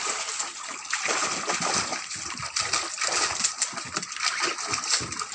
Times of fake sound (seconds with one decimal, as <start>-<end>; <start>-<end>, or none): none